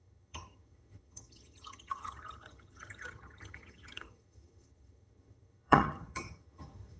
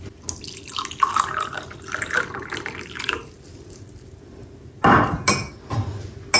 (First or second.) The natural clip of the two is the second